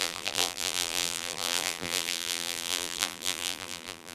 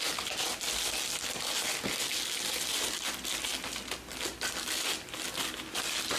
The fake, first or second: first